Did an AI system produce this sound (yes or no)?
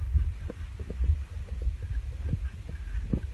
no